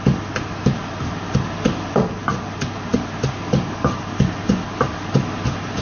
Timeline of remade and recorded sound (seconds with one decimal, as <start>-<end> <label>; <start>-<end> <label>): 0.0-5.8 recorded